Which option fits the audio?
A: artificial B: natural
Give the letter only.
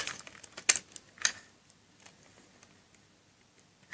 B